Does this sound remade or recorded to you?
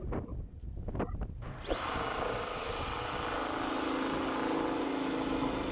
recorded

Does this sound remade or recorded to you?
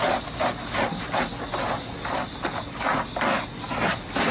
recorded